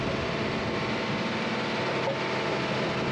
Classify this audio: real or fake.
real